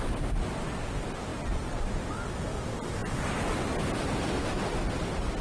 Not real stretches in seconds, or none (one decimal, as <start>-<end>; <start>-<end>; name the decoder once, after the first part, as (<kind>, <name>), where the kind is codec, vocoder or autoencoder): none